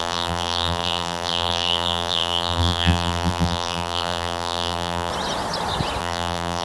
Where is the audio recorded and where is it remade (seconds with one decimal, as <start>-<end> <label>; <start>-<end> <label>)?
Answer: 0.0-5.1 remade; 5.1-6.0 recorded; 6.0-6.6 remade